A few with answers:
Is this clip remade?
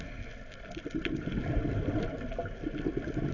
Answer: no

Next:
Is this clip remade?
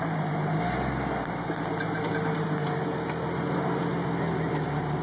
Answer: no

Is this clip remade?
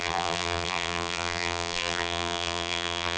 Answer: yes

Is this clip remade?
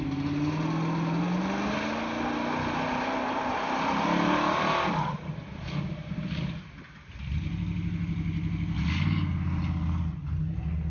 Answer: no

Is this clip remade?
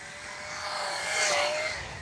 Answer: yes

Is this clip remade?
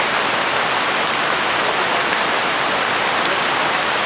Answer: no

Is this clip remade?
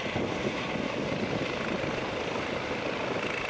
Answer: no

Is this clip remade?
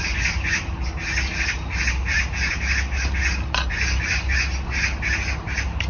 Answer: no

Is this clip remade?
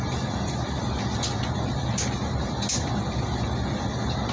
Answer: no